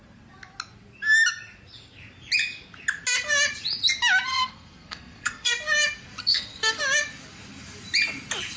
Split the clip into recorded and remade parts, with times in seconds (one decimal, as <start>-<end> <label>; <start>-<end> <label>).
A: 0.0-4.3 recorded; 4.3-5.5 remade; 5.5-6.2 recorded; 6.2-6.8 remade; 6.8-8.6 recorded